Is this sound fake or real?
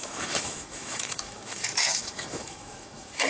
fake